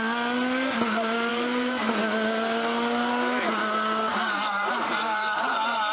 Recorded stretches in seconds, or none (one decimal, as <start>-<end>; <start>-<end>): 0.0-1.3; 2.0-4.1